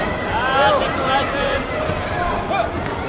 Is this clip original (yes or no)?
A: yes